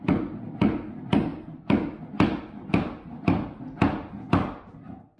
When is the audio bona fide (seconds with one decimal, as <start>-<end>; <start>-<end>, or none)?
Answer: 0.0-5.2